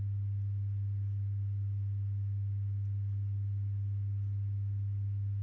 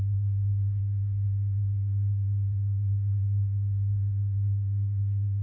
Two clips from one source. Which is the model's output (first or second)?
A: second